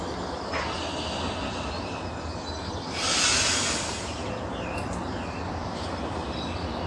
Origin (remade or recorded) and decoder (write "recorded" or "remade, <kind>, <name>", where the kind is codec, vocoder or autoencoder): recorded